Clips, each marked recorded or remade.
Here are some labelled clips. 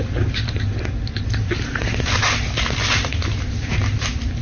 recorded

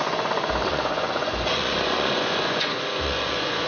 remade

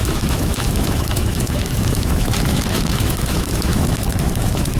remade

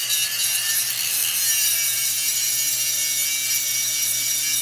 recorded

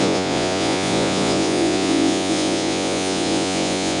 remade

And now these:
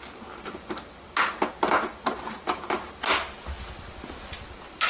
recorded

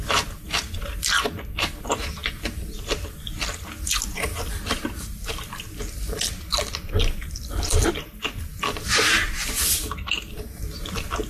remade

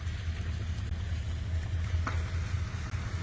recorded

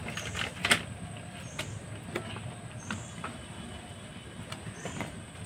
recorded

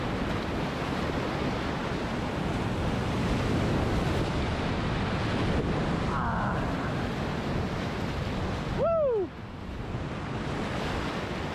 recorded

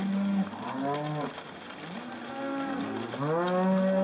recorded